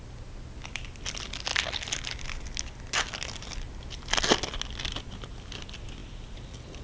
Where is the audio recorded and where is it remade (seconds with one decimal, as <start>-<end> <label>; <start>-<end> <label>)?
0.0-6.8 recorded